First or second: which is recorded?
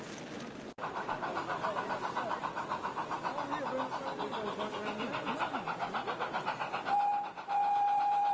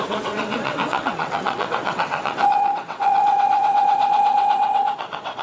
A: first